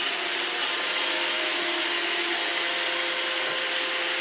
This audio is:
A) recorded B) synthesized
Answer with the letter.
A